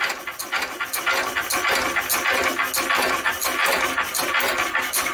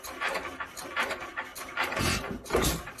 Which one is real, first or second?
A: first